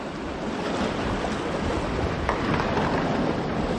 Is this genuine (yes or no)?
yes